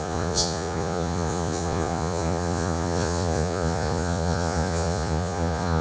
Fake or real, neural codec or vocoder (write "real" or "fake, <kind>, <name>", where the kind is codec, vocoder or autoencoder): fake, vocoder, Vocos